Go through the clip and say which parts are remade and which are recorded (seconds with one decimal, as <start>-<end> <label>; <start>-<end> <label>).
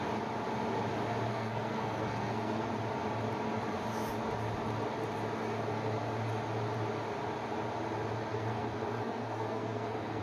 0.0-1.3 recorded; 1.3-2.7 remade; 2.7-8.3 recorded; 8.3-10.2 remade